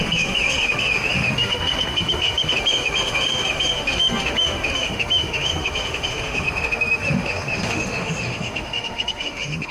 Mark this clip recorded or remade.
remade